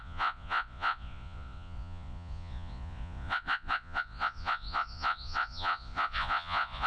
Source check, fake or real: fake